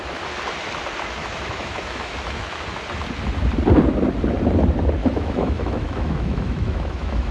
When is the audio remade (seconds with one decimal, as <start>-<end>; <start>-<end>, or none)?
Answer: 1.2-2.6; 5.0-7.3